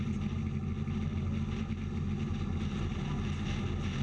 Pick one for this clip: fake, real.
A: real